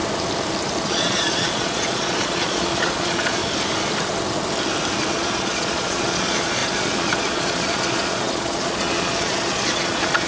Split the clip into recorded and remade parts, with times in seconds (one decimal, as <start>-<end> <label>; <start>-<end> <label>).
0.0-0.8 recorded; 0.8-3.4 remade; 3.4-5.1 recorded; 5.1-10.3 remade